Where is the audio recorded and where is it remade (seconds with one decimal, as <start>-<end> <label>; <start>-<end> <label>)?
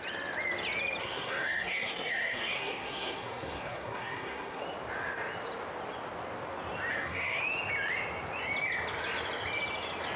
0.0-1.0 recorded; 1.0-4.6 remade; 4.6-6.9 recorded; 6.9-7.4 remade; 7.4-10.2 recorded